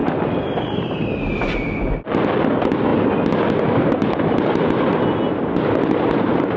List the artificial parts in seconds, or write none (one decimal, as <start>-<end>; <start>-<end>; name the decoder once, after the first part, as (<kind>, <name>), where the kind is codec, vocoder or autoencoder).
none